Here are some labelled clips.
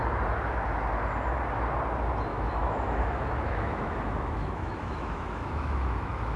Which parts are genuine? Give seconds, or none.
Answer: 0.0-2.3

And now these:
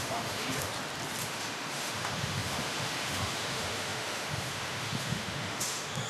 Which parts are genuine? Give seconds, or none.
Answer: 0.7-1.2

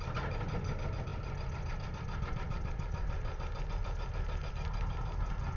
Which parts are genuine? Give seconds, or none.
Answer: 0.0-5.6

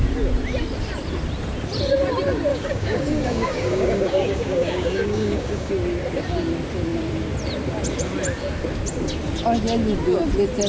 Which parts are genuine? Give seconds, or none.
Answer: 0.0-2.5; 5.7-10.7

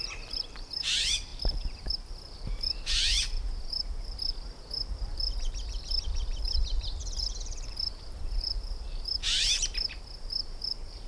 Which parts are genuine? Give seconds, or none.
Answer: none